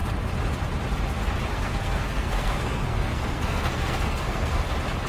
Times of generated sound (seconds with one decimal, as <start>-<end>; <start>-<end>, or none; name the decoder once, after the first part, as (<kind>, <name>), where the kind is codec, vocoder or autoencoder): 1.5-4.6 (codec, SNAC)